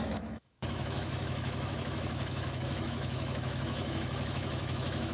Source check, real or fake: fake